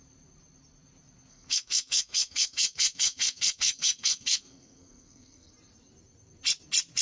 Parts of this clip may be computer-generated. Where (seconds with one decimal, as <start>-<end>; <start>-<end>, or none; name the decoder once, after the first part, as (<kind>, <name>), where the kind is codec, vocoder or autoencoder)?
1.3-5.5 (codec, SNAC)